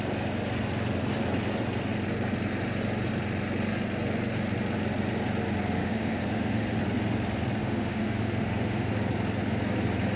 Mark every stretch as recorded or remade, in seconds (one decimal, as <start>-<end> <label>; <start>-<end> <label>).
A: 0.0-5.8 recorded; 5.8-6.8 remade; 6.8-7.6 recorded; 7.6-8.9 remade; 8.9-10.2 recorded